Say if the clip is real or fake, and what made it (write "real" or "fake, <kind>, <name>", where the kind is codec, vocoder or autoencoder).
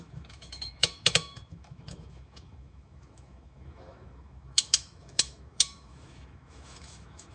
fake, autoencoder, DAC-VAE